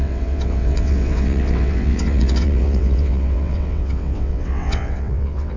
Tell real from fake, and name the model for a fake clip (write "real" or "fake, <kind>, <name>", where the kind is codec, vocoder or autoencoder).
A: fake, vocoder, WaveNeXt